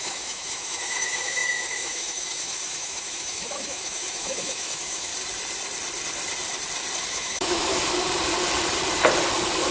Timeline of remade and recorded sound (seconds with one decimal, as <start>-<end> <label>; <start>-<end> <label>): 0.0-5.1 remade; 5.1-7.0 recorded; 7.0-7.7 remade; 7.7-9.7 recorded